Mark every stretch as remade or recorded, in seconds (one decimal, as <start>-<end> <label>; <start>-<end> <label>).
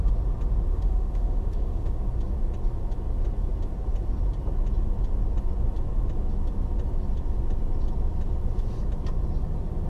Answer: 0.0-0.7 recorded; 0.7-1.9 remade; 1.9-9.9 recorded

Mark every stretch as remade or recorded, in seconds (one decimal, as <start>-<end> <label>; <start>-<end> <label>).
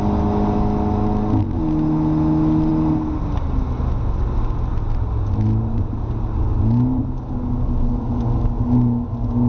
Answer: 0.0-9.5 recorded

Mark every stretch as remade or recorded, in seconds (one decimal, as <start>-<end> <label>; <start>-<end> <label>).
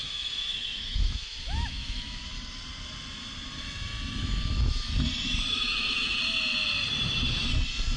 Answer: 0.0-2.3 remade; 2.3-5.5 recorded; 5.5-6.2 remade; 6.2-8.0 recorded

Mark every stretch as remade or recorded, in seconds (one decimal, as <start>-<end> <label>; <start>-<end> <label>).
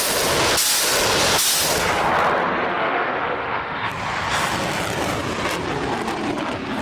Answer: 0.0-2.7 recorded; 2.7-3.9 remade; 3.9-6.8 recorded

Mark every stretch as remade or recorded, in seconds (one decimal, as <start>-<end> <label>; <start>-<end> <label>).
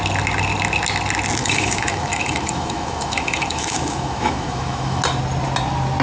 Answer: 0.0-1.4 recorded; 1.4-5.0 remade; 5.0-6.0 recorded